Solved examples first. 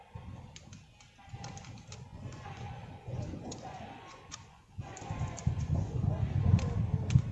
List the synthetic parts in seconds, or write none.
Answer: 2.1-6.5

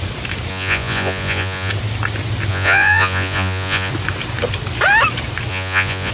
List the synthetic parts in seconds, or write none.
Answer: 0.5-1.7; 2.5-3.9; 5.5-6.1

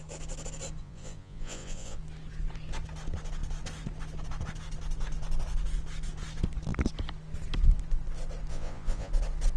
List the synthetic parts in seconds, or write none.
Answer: 0.8-2.0; 8.5-9.1